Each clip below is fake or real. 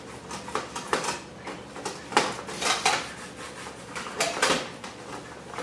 real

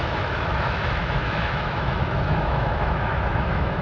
fake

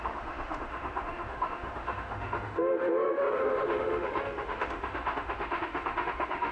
fake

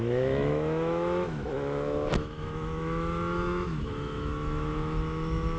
fake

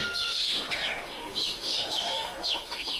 fake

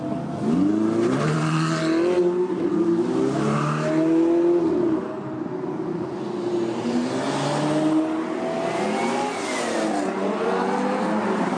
real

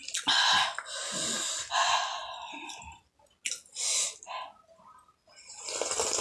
real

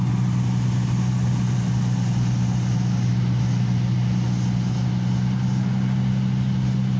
real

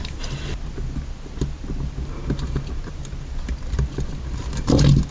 real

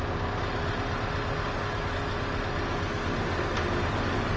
real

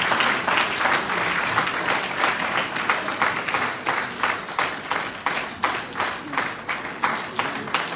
real